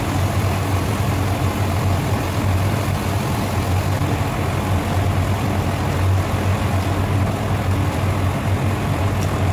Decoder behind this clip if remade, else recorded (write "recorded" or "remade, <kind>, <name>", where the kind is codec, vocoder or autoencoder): recorded